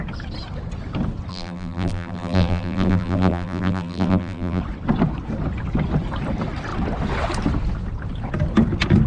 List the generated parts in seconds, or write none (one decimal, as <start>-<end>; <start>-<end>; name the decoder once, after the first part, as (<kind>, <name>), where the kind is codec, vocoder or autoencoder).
1.3-4.6 (vocoder, BigVGAN v2)